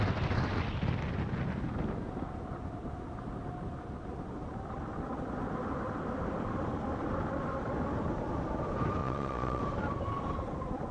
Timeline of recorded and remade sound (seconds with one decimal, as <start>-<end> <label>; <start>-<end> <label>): 0.0-9.0 recorded; 9.0-9.6 remade; 9.6-10.9 recorded